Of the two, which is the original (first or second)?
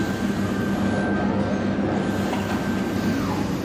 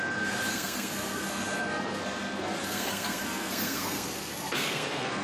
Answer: first